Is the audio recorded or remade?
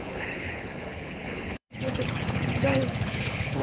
remade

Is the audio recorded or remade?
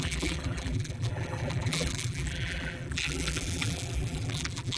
remade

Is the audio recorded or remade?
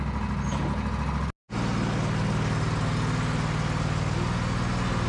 recorded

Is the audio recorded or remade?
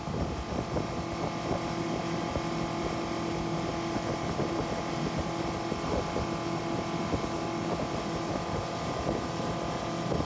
recorded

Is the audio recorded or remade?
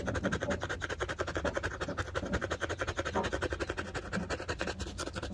recorded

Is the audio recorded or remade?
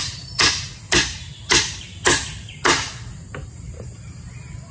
recorded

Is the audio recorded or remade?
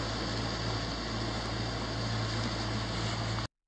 recorded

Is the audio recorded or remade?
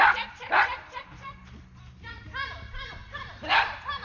recorded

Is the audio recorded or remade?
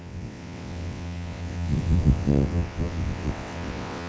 remade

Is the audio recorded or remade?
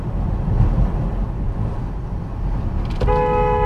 recorded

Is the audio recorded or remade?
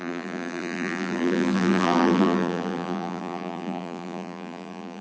remade